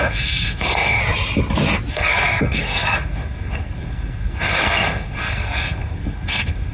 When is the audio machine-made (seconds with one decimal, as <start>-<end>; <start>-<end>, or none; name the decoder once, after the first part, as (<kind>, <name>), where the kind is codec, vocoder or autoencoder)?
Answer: 0.0-1.0 (codec, SNAC); 1.9-6.7